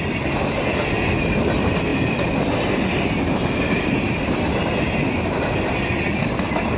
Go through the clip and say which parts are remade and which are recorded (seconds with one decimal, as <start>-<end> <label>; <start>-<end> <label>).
0.0-6.8 recorded